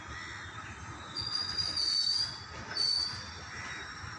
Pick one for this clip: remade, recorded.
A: recorded